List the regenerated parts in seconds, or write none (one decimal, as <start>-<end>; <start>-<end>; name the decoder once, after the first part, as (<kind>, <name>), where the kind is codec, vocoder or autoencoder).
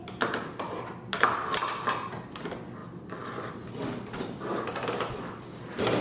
none